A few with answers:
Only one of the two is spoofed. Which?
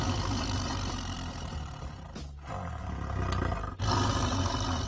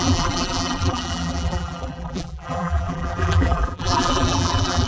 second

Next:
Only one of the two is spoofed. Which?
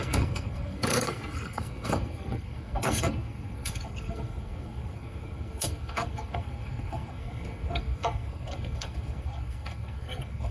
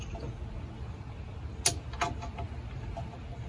first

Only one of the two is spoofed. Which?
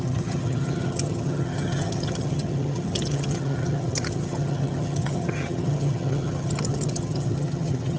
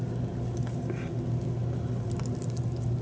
first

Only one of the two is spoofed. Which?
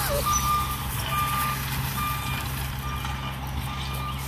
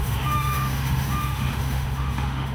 second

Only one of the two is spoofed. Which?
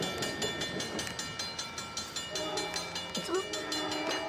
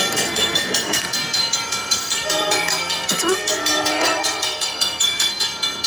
second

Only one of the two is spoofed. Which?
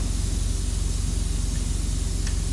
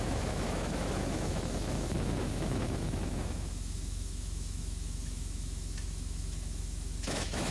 second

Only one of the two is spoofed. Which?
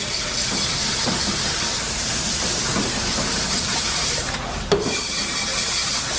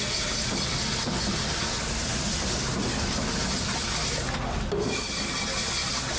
first